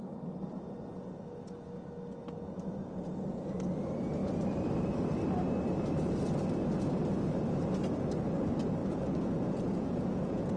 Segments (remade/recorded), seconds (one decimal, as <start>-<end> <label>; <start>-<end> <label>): 0.0-8.8 recorded; 8.8-10.6 remade